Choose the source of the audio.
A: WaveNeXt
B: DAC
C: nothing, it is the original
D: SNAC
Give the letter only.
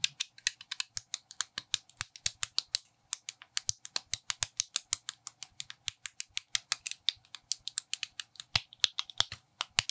C